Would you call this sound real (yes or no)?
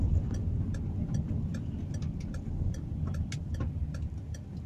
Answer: yes